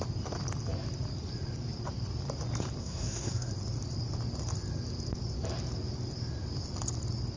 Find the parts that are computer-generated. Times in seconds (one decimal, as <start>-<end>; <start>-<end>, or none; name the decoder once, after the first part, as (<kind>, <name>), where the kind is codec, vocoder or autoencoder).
2.8-3.5 (codec, SNAC)